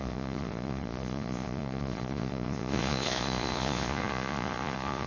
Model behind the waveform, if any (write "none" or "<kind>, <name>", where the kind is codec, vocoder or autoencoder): vocoder, Vocos